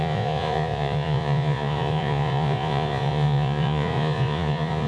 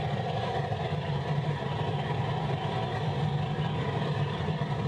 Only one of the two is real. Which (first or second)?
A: second